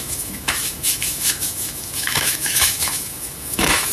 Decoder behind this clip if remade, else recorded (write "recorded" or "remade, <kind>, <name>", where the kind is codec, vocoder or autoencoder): remade, autoencoder, DAC-VAE